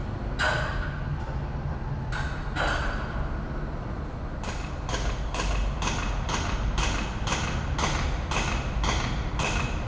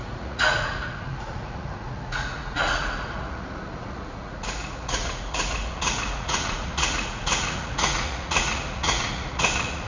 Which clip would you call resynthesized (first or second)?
second